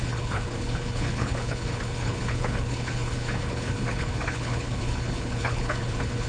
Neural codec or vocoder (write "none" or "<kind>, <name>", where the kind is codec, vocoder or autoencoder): codec, HILCodec